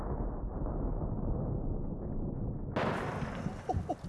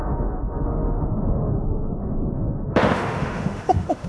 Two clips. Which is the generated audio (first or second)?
second